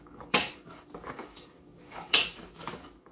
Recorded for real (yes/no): no